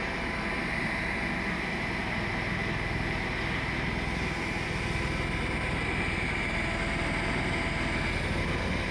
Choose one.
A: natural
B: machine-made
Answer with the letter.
A